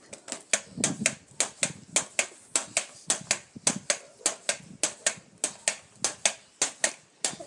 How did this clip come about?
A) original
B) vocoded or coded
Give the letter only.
A